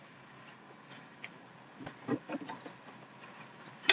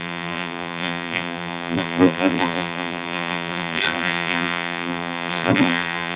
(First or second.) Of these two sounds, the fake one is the second